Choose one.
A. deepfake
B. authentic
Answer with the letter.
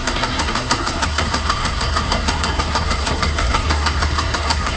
A